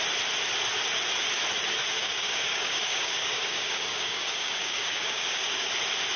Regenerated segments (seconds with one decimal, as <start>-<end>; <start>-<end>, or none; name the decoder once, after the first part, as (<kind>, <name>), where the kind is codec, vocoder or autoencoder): 2.0-5.7 (codec, DAC)